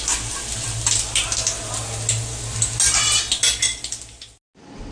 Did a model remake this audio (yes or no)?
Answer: no